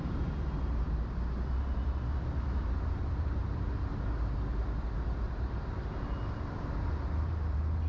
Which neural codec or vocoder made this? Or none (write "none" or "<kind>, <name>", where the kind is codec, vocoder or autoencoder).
none